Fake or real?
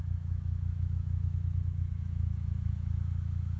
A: fake